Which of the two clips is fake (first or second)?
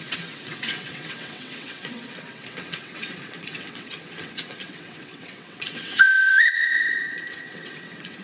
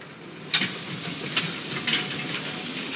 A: first